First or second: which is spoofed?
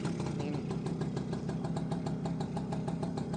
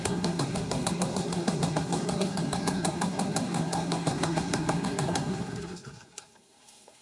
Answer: second